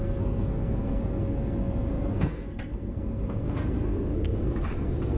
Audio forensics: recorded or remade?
remade